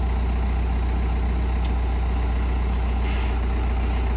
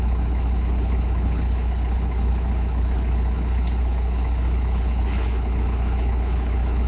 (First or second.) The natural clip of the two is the first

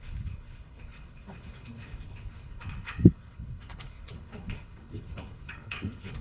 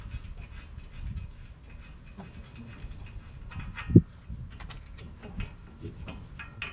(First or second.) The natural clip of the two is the second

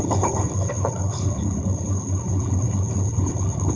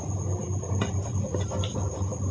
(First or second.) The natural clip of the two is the second